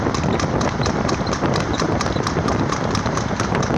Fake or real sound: fake